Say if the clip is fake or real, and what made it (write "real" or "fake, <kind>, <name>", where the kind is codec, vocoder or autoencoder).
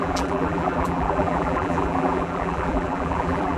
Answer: fake, vocoder, BigVGAN v2